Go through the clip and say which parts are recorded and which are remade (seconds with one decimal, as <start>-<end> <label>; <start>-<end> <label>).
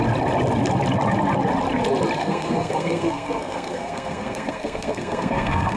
0.0-2.2 recorded; 2.2-5.8 remade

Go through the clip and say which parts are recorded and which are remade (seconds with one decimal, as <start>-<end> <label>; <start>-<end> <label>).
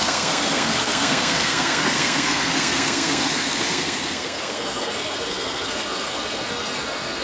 0.0-7.2 remade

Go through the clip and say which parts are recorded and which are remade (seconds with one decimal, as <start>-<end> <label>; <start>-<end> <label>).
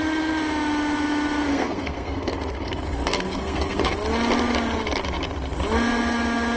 0.0-1.5 recorded; 1.5-3.9 remade; 3.9-6.6 recorded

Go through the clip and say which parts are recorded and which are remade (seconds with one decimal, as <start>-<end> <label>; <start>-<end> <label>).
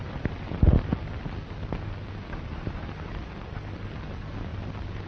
0.0-5.1 recorded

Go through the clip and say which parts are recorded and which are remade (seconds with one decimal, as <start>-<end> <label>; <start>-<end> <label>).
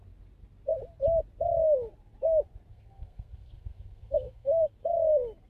0.0-2.7 recorded; 2.7-4.7 remade; 4.7-5.5 recorded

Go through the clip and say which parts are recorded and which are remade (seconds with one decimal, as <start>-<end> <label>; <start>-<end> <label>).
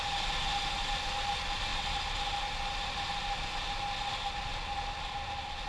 0.0-5.7 recorded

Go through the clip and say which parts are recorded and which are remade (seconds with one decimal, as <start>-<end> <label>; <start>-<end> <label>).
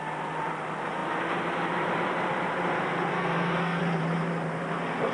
0.0-3.1 recorded; 3.1-3.8 remade; 3.8-5.1 recorded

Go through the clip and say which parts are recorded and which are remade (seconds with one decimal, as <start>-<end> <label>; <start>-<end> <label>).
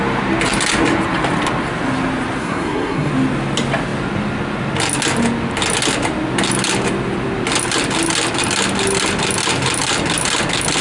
0.0-2.4 recorded; 2.4-3.1 remade; 3.1-10.8 recorded